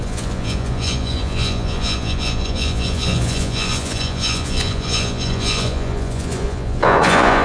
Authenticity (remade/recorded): remade